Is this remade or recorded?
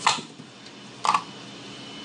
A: recorded